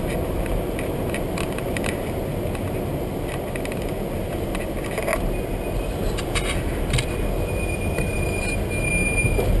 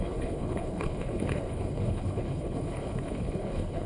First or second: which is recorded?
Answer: first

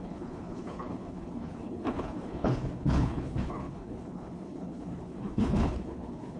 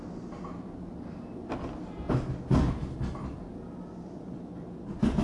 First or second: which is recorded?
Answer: second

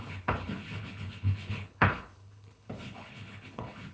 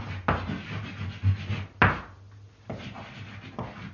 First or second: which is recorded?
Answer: second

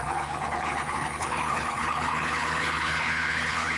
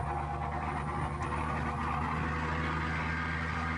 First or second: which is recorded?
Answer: second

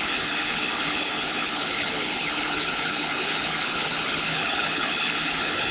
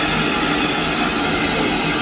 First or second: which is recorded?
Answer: second